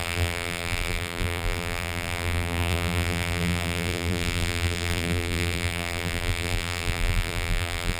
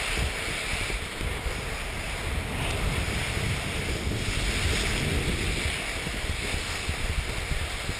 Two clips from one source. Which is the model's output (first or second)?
first